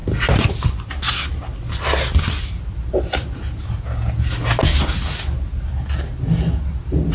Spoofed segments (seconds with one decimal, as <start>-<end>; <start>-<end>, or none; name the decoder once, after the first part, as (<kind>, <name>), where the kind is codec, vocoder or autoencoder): none